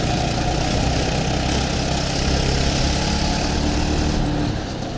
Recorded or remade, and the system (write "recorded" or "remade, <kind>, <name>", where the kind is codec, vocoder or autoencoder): recorded